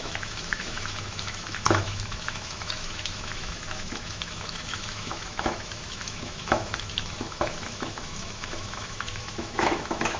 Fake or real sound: fake